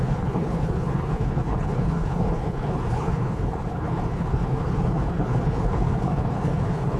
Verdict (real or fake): fake